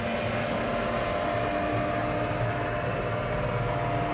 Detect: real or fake real